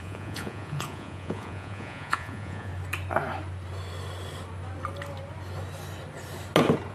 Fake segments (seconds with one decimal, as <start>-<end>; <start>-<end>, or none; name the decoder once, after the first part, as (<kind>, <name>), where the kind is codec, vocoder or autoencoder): 0.0-2.7 (vocoder, Vocos)